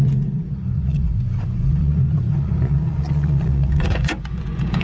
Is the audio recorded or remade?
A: remade